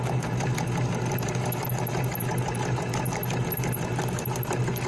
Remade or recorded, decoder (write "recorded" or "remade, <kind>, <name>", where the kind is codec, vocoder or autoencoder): recorded